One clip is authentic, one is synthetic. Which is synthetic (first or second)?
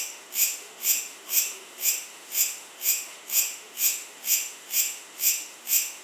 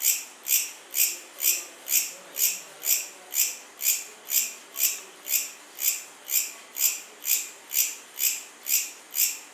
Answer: first